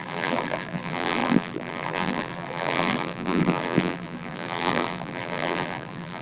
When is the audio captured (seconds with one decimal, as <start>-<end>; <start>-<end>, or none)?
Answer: none

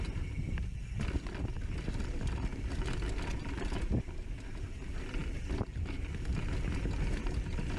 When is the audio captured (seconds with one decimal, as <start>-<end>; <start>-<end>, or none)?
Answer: 0.0-7.8

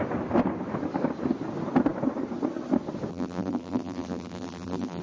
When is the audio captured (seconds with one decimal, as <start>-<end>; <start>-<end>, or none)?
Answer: 0.0-3.1

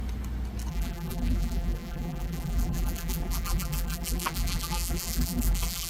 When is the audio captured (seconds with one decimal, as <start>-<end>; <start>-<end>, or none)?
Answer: 0.0-0.7

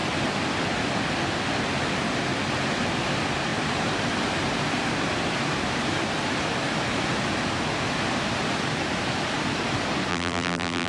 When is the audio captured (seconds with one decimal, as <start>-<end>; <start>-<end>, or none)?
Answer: 0.0-10.1

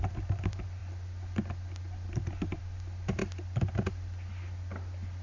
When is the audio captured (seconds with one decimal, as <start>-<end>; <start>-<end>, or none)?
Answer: 0.0-5.2

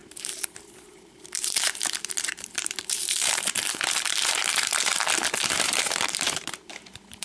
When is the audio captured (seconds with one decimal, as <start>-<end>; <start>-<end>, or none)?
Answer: 4.9-5.4

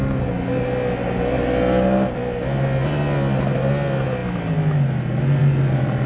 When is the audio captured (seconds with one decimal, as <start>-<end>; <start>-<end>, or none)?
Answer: 0.0-6.1